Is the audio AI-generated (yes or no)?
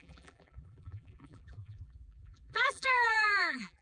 yes